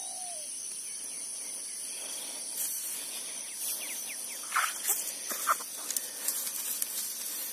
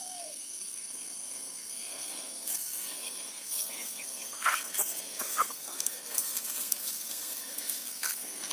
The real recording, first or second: first